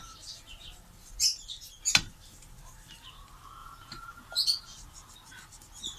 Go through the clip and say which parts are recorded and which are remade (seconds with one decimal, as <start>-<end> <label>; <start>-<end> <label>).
0.0-3.6 recorded; 3.6-4.6 remade; 4.6-6.0 recorded